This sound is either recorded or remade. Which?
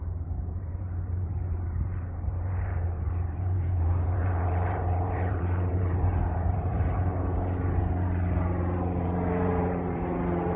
remade